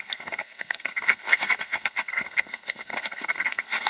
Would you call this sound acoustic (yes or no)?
no